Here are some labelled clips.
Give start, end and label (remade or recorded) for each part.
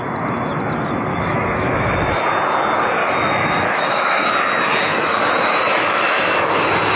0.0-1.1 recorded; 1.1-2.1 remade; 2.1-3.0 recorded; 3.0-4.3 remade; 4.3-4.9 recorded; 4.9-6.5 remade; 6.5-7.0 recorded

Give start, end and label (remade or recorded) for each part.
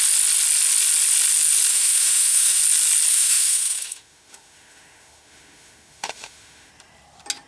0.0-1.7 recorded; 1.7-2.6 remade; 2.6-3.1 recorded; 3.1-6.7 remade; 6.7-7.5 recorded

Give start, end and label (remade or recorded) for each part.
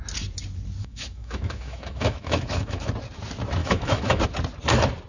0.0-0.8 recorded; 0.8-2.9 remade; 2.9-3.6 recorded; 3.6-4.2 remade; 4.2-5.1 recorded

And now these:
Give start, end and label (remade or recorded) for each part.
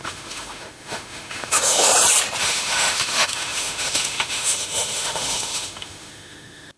0.0-1.9 remade; 1.9-2.4 recorded; 2.4-6.8 remade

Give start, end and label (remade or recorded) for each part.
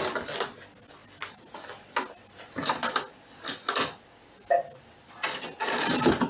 0.0-6.3 recorded